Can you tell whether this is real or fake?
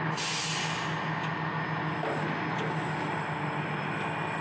real